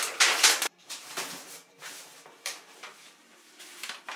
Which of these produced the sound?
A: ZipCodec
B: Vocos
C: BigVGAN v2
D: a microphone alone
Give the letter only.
C